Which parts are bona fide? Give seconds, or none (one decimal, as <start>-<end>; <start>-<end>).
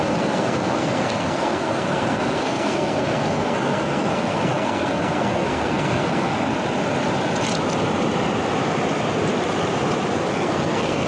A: 6.5-10.3